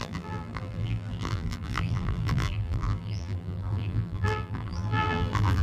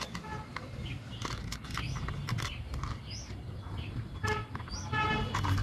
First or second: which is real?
second